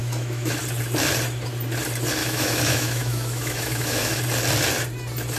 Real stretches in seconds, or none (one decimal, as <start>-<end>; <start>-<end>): 0.6-2.2; 4.2-5.4